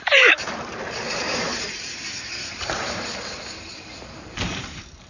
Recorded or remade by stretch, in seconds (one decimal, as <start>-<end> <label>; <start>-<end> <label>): 0.0-5.1 remade